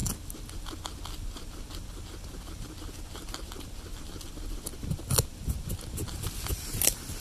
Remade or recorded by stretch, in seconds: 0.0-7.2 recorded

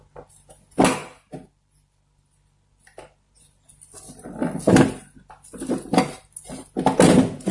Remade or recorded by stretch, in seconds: 0.0-7.5 recorded

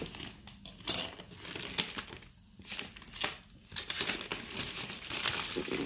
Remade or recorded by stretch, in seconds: 0.0-5.9 recorded